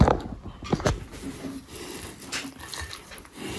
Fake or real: real